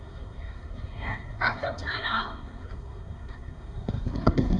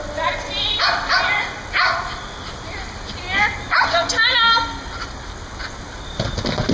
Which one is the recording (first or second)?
second